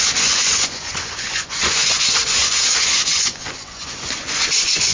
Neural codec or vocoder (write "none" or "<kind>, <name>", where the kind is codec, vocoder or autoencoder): vocoder, Vocos